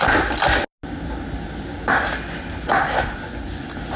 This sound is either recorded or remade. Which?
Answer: recorded